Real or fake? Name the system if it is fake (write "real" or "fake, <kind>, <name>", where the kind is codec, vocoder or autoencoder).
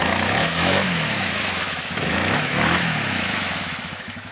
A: fake, autoencoder, DAC-VAE